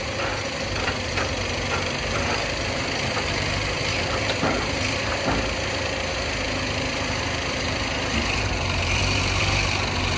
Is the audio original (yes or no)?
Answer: no